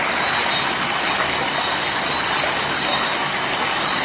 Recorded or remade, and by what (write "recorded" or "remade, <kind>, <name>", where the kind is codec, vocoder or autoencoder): recorded